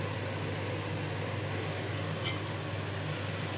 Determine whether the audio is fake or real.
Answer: real